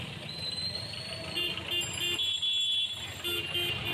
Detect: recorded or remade recorded